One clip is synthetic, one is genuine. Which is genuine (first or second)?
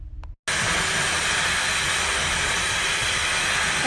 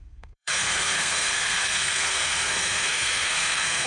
first